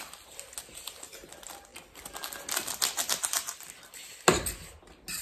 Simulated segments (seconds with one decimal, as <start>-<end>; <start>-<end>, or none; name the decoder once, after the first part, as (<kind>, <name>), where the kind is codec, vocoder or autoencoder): none